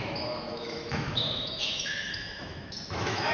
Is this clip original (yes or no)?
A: no